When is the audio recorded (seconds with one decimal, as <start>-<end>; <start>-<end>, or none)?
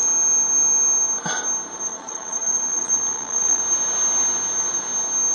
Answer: 0.0-1.9; 3.6-5.3